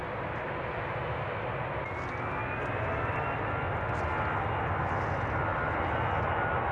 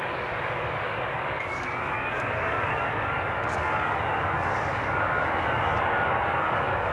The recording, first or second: first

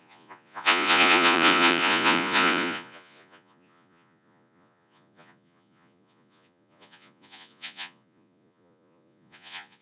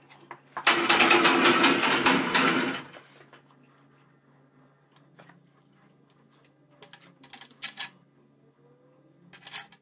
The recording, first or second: second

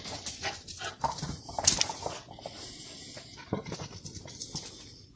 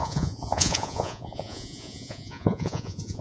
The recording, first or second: first